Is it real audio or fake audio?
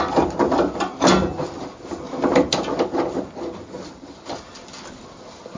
real